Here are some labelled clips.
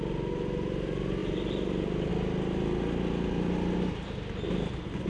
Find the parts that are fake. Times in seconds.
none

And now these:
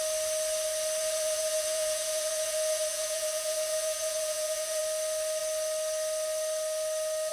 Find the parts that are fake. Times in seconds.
1.0-4.8